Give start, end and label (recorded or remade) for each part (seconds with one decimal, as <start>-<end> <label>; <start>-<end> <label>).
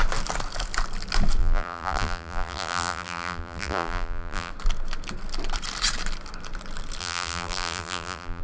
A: 0.0-1.4 recorded; 1.4-4.5 remade; 4.5-7.0 recorded; 7.0-8.4 remade